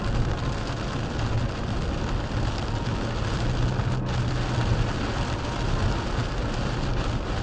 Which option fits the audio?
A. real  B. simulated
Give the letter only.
A